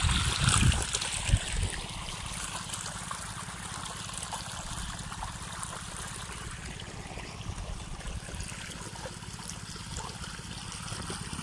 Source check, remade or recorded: recorded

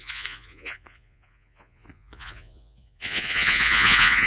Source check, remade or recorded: remade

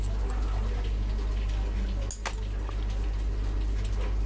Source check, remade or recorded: recorded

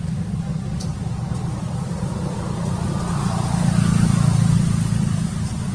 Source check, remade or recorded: recorded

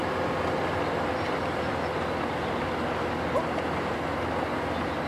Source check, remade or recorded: recorded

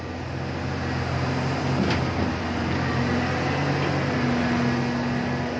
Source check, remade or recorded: recorded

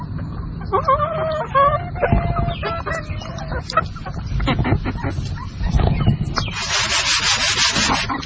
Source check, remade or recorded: recorded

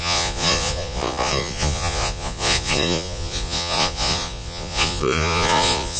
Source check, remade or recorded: remade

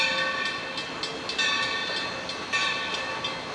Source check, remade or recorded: recorded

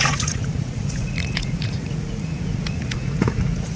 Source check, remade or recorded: remade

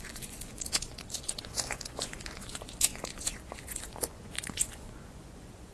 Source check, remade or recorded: remade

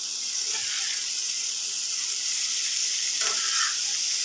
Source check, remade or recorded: recorded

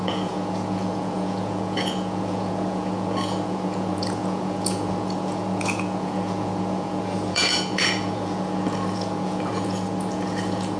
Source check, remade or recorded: remade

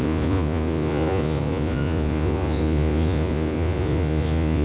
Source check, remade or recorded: remade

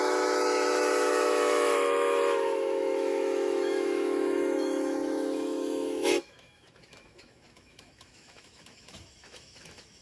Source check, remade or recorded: remade